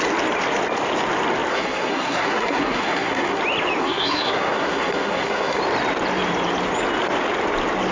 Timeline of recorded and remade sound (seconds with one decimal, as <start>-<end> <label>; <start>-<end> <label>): 0.0-1.5 recorded; 1.5-3.4 remade; 3.4-3.8 recorded; 3.8-5.6 remade; 5.6-7.9 recorded